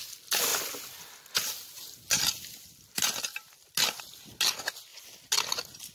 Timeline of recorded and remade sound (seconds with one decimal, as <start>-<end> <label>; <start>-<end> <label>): 0.0-5.9 recorded